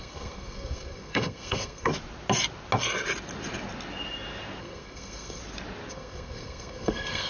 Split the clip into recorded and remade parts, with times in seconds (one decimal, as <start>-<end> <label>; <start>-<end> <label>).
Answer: 0.0-1.9 remade; 1.9-4.6 recorded; 4.6-5.4 remade; 5.4-5.9 recorded; 5.9-7.3 remade